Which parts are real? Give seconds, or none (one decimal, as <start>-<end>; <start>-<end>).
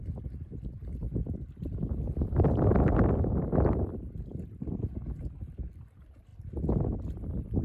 0.0-0.8; 4.2-7.6